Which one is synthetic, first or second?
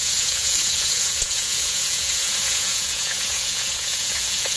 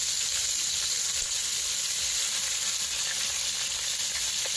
first